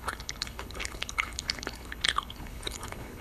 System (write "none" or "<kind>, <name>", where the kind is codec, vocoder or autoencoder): codec, HILCodec